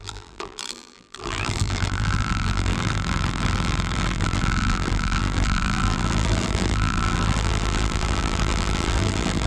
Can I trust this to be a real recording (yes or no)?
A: no